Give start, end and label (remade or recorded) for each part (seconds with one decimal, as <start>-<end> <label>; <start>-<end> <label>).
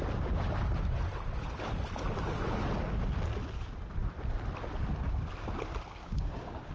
0.0-6.0 recorded; 6.0-6.7 remade